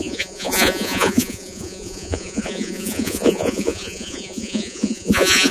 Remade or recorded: remade